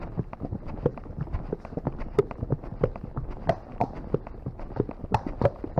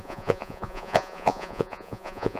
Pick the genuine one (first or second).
first